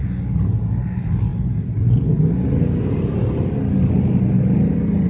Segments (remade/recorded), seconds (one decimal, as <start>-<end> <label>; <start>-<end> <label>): 0.0-5.1 recorded